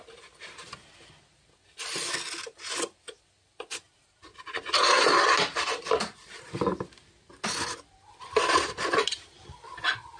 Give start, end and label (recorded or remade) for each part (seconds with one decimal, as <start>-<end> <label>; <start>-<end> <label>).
0.0-10.2 recorded